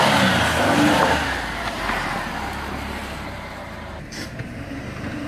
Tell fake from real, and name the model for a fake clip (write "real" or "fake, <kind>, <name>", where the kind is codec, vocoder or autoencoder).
fake, vocoder, BigVGAN v2